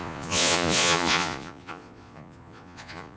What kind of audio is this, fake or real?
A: fake